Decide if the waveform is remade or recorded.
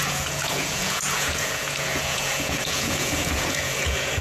remade